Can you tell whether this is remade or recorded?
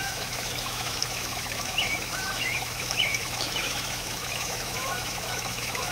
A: remade